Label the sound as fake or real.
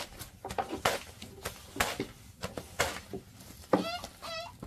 real